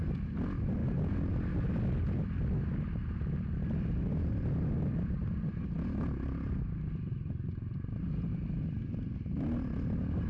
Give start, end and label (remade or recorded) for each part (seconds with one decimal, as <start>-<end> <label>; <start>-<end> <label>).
0.0-0.8 recorded; 0.8-1.3 remade; 1.3-10.3 recorded